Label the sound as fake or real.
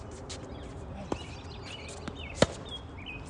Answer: real